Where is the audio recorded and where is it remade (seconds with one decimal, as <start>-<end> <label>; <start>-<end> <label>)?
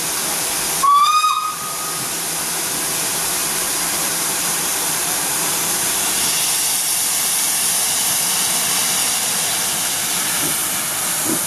0.0-3.4 recorded; 3.4-5.6 remade; 5.6-11.5 recorded